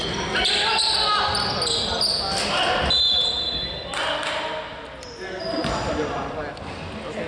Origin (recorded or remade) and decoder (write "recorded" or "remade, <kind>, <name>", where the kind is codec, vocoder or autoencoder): recorded